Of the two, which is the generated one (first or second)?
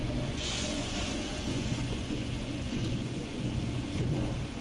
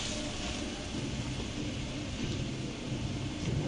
first